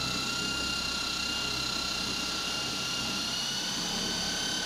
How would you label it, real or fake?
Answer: real